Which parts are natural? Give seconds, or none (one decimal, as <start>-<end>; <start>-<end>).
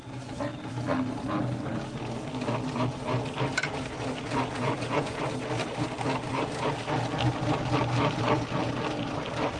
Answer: 0.0-4.6; 5.2-9.6